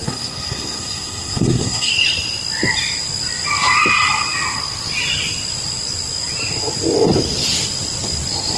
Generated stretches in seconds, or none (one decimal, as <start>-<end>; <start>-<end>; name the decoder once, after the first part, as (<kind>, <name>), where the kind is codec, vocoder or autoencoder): 0.0-1.9 (codec, SNAC)

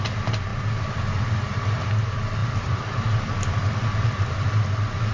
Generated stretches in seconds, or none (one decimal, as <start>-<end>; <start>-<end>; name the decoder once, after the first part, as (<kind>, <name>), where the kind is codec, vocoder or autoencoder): 2.4-4.3 (vocoder, BigVGAN v2)

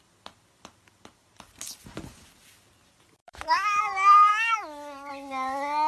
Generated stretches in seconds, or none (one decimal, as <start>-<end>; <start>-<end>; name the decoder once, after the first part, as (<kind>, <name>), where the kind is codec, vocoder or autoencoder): 3.2-3.8 (autoencoder, DAC-VAE); 4.3-5.1

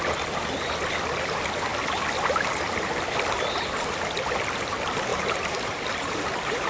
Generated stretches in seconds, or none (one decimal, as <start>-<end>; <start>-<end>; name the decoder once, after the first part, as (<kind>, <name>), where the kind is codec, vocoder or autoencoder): 5.1-6.7 (vocoder, BigVGAN v2)